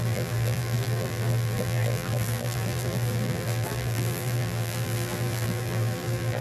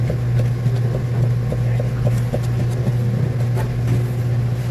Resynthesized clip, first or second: first